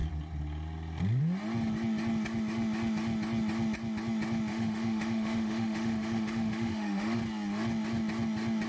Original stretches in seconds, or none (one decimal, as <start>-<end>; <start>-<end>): 0.0-4.5; 7.2-8.7